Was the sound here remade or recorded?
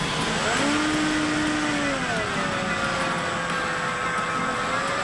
recorded